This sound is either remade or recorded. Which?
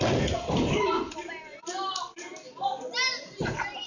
recorded